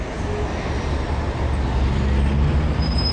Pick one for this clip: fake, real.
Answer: real